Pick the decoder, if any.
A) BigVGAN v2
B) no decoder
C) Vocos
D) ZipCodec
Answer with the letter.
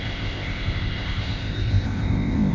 D